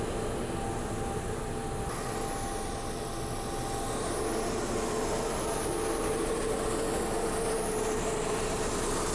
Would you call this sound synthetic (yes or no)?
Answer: no